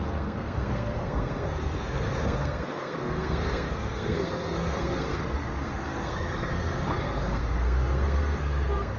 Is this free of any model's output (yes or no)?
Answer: no